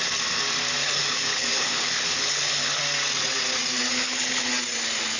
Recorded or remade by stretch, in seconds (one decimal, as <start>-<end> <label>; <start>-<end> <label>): 0.0-0.8 recorded; 0.8-2.8 remade; 2.8-3.9 recorded; 3.9-4.5 remade; 4.5-5.2 recorded